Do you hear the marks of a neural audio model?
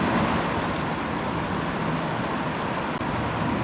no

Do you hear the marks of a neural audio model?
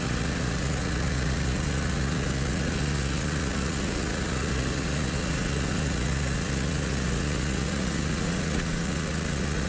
yes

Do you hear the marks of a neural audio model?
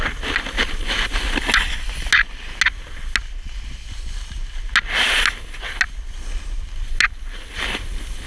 no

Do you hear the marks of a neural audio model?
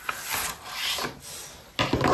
no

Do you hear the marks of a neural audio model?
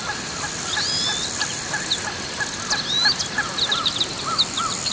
no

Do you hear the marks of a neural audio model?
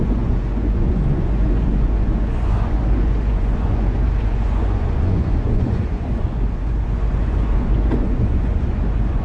yes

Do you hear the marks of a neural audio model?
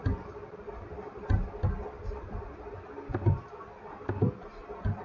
no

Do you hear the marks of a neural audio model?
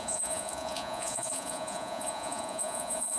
yes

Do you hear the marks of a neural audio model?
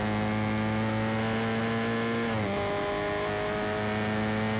no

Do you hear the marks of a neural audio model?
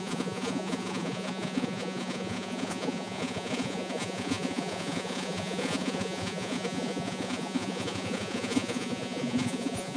yes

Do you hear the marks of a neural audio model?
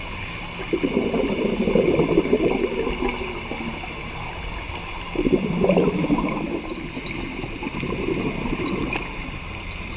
no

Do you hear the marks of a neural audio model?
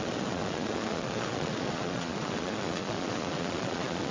yes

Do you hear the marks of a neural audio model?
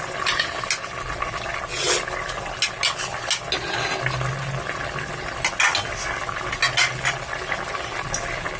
no